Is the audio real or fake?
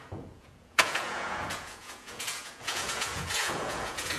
fake